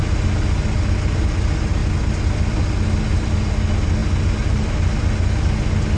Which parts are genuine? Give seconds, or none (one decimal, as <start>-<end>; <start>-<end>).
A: 0.0-6.0